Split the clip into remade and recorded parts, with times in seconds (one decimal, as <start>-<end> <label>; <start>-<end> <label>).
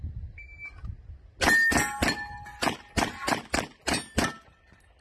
0.0-5.0 recorded